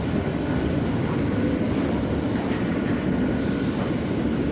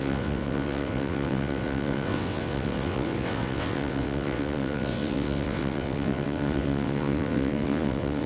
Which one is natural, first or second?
first